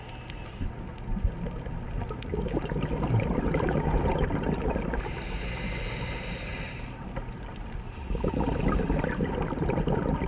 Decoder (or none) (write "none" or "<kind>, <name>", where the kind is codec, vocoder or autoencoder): none